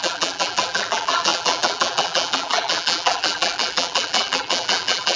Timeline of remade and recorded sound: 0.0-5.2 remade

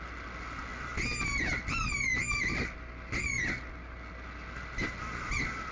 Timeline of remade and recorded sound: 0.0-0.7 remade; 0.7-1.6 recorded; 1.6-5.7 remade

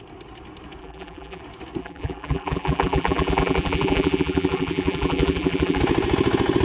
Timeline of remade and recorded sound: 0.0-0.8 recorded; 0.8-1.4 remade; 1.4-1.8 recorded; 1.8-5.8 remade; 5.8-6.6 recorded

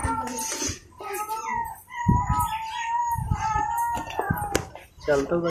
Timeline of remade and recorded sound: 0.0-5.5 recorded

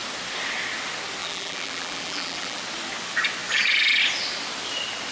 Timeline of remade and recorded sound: 0.0-1.2 recorded; 1.2-2.6 remade; 2.6-5.1 recorded

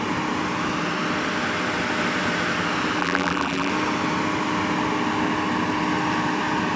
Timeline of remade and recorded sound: 0.0-3.0 recorded; 3.0-3.7 remade; 3.7-6.8 recorded

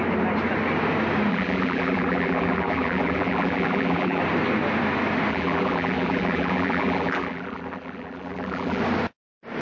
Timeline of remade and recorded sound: 0.0-1.3 recorded; 1.3-4.2 remade; 4.2-5.3 recorded; 5.3-8.8 remade; 8.8-9.6 recorded